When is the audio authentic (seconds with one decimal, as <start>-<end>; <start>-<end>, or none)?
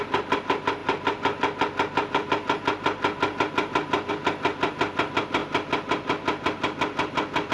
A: 0.0-7.5